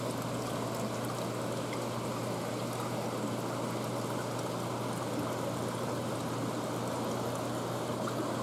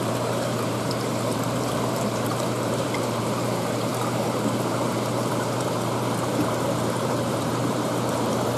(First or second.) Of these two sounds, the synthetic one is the second